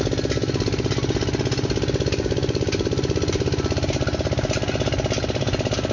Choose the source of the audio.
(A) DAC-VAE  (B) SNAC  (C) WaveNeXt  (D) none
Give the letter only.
D